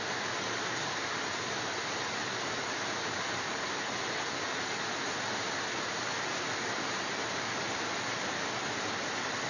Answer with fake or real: real